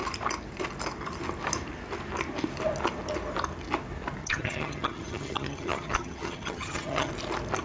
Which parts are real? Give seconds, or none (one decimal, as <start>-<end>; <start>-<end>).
0.0-4.2; 7.1-7.6